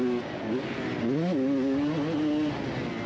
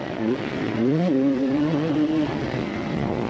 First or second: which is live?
first